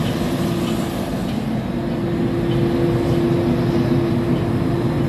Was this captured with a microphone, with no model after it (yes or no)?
yes